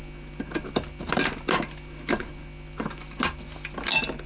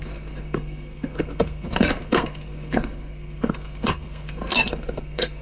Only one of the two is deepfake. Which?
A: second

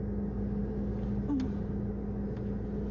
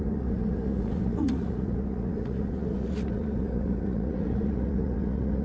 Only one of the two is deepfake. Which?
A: second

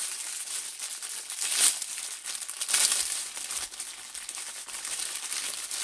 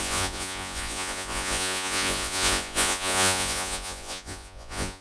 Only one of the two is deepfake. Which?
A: second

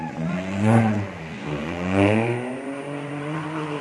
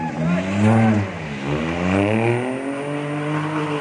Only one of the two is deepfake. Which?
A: first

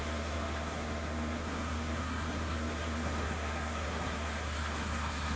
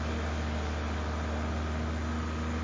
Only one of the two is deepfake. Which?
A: first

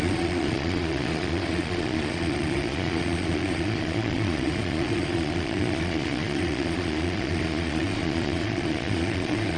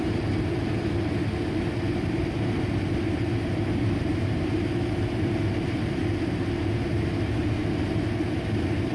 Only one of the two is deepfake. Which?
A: first